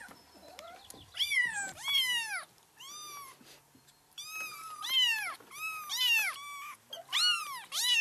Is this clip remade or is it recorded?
recorded